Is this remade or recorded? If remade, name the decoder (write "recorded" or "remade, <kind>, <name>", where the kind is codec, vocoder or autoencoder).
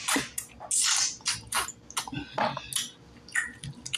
recorded